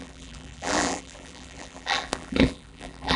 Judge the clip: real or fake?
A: fake